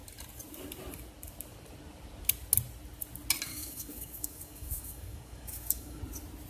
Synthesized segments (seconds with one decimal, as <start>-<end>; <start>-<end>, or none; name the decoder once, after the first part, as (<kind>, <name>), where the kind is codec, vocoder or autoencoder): 3.5-6.0 (codec, DAC)